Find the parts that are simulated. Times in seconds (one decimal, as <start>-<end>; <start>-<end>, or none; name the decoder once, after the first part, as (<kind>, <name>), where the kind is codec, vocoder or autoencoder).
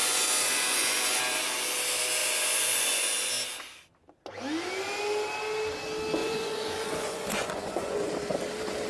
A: 0.0-1.2 (vocoder, Vocos); 2.2-3.3; 6.2-8.1